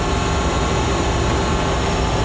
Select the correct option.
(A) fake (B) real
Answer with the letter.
B